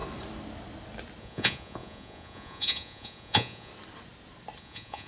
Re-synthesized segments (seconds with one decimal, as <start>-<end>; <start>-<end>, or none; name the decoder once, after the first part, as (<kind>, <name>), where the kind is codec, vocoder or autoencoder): 1.2-3.7 (vocoder, Vocos); 4.6-5.1

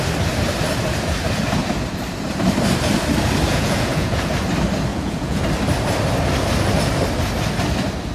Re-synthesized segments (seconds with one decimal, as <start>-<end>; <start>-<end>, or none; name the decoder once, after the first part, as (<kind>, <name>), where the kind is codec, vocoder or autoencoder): 3.5-4.3 (vocoder, Vocos); 4.9-5.4

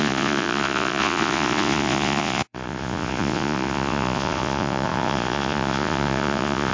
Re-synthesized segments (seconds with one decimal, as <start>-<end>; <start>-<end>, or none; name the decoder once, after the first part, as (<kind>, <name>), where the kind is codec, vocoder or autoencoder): 0.0-6.7 (vocoder, Vocos)

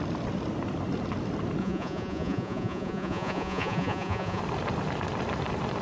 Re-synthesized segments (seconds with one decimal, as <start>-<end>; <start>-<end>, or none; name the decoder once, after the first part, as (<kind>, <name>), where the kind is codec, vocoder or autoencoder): 1.6-4.4 (vocoder, Vocos)

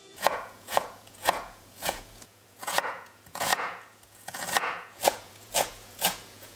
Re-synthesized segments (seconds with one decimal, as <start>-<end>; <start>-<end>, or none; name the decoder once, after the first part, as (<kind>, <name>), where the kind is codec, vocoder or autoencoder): 0.0-6.6 (vocoder, Vocos)

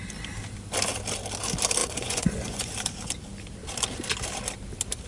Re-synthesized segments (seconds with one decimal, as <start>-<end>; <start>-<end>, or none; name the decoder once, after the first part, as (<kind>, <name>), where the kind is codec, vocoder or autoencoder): 1.8-2.7 (vocoder, Vocos)